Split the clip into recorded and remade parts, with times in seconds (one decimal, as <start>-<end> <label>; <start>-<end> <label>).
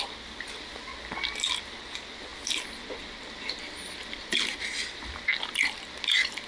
0.0-6.5 recorded